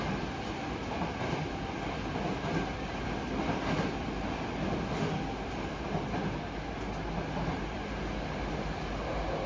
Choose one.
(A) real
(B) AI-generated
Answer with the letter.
A